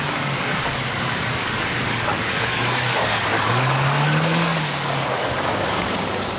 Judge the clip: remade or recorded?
remade